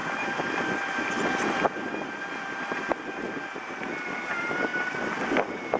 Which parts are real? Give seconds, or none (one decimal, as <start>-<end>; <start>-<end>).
0.0-5.8